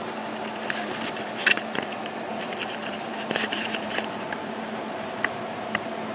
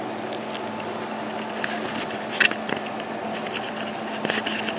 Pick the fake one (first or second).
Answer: first